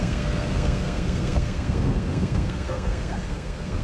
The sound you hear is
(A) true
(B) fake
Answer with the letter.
B